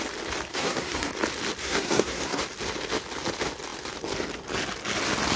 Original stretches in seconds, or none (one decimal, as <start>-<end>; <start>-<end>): 0.0-0.5; 1.1-1.6; 2.4-5.4